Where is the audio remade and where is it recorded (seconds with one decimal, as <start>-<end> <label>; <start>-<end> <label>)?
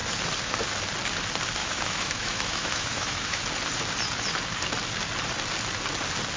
0.0-1.6 recorded; 1.6-3.4 remade; 3.4-6.4 recorded